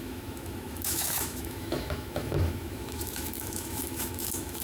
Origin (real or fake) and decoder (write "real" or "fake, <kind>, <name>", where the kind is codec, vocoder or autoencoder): fake, autoencoder, DAC-VAE